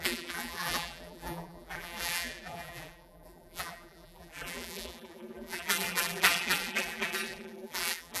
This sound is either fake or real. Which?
fake